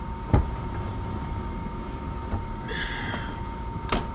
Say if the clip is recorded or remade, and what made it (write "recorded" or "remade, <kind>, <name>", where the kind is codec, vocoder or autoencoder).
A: recorded